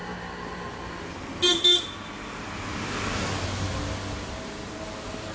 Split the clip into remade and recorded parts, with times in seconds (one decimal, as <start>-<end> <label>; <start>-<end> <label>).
0.0-5.3 recorded